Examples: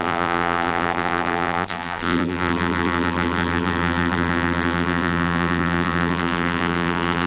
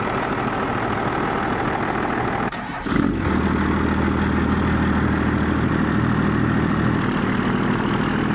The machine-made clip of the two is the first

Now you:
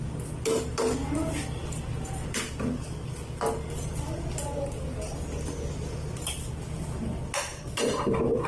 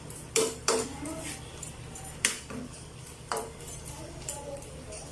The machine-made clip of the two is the second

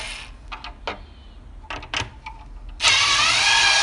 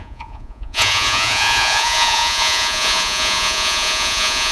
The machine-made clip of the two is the second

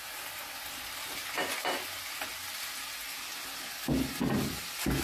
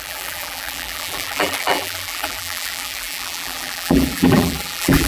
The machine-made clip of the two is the second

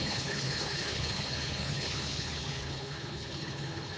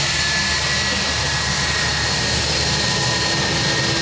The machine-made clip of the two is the first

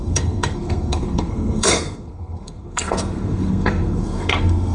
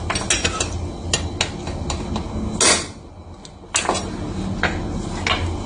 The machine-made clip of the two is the first